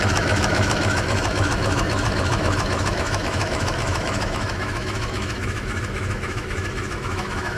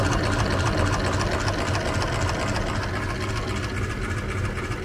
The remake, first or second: first